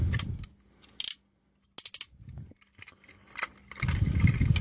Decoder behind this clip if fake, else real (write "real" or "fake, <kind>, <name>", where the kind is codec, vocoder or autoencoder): real